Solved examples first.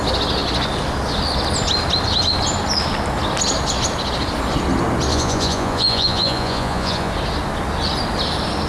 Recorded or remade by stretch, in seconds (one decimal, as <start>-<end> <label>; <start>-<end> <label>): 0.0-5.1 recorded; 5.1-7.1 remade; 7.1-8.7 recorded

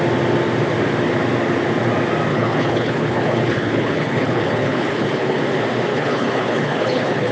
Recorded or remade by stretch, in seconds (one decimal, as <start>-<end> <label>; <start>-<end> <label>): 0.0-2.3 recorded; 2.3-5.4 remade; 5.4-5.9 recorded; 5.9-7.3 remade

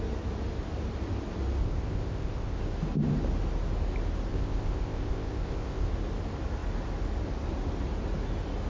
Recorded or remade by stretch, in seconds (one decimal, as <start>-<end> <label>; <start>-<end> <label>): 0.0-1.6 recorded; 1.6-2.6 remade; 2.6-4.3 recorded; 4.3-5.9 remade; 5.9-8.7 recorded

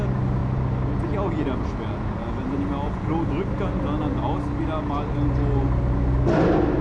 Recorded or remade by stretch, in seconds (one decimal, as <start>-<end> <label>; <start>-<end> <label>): 0.0-6.8 recorded